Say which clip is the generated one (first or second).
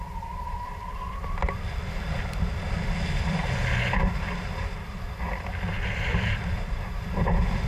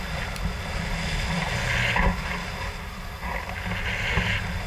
first